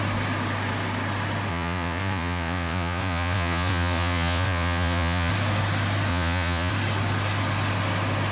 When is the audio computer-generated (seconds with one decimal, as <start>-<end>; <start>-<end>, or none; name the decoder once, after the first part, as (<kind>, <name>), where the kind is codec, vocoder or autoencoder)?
1.5-5.3 (vocoder, Vocos); 6.1-6.7